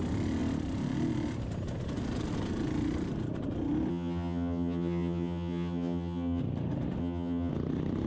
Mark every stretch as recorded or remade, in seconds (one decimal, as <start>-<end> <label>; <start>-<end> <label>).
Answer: 0.0-3.9 recorded; 3.9-6.4 remade; 6.4-7.0 recorded; 7.0-7.5 remade; 7.5-8.1 recorded